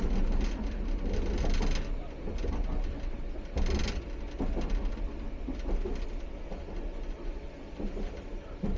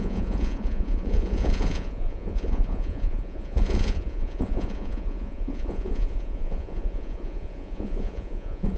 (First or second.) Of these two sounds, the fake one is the second